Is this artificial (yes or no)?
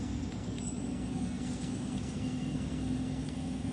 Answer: yes